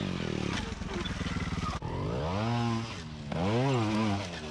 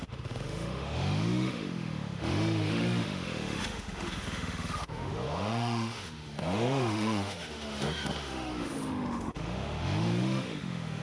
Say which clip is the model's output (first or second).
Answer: second